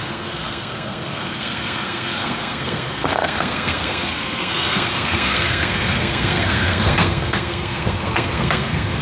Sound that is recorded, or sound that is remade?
remade